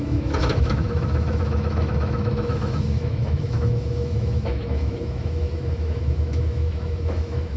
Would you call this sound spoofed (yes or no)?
yes